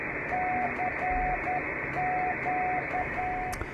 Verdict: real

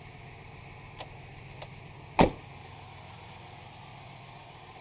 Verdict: real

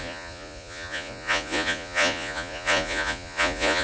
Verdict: fake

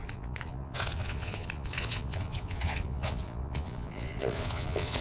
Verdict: fake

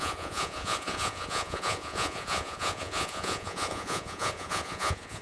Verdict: fake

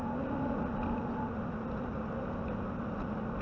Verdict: real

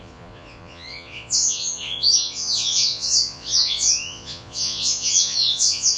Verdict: fake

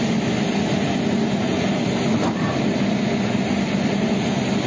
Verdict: real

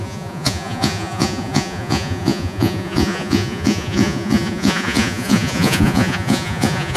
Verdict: fake